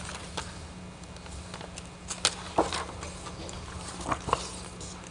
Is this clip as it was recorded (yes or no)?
yes